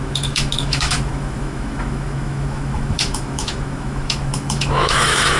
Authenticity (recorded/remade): remade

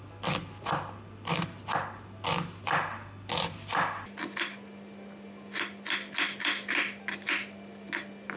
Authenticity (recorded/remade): recorded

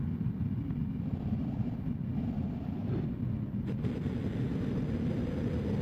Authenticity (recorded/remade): recorded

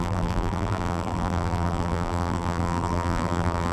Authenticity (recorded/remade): remade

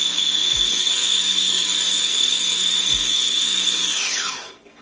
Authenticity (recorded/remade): remade